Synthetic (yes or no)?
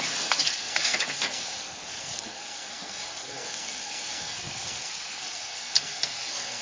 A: yes